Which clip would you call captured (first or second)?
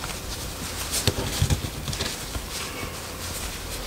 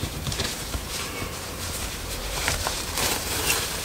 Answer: first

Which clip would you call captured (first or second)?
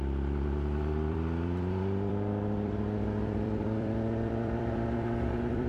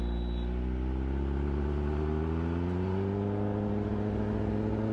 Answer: second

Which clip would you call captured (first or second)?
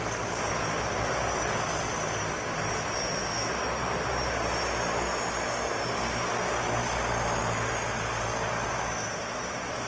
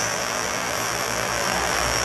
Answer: first